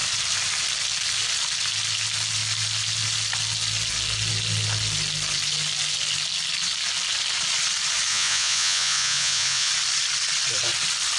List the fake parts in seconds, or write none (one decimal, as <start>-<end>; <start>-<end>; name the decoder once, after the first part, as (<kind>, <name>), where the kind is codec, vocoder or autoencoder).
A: 8.1-9.7 (vocoder, Vocos)